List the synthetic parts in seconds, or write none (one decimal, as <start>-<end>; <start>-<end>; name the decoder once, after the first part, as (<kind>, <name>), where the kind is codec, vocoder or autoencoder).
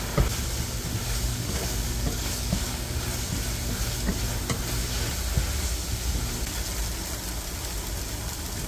1.3-3.0 (codec, DAC)